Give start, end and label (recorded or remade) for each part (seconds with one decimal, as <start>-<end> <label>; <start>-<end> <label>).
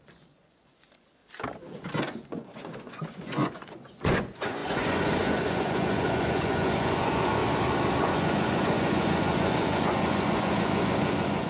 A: 0.0-1.2 remade; 1.2-2.0 recorded; 2.0-7.4 remade; 7.4-8.0 recorded; 8.0-11.5 remade